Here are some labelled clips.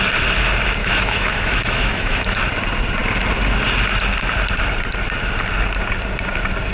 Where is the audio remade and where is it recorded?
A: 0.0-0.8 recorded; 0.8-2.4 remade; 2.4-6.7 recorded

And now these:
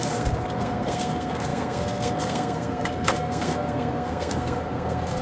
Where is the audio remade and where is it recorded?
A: 0.0-5.2 remade

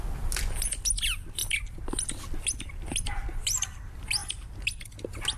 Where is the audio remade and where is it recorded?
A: 0.0-5.4 recorded

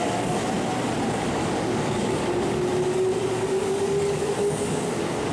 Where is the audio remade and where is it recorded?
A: 0.0-0.4 remade; 0.4-1.1 recorded; 1.1-5.3 remade

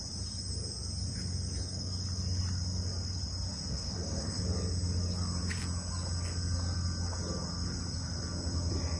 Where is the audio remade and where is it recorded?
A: 0.0-3.7 recorded; 3.7-4.4 remade; 4.4-9.0 recorded

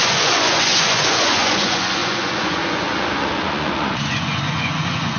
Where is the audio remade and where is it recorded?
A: 0.0-5.2 remade

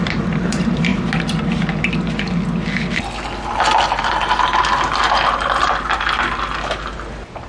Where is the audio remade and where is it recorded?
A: 0.0-0.9 remade; 0.9-4.0 recorded; 4.0-7.5 remade